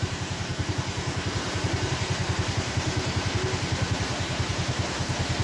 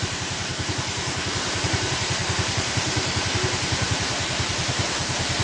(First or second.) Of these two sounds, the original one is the first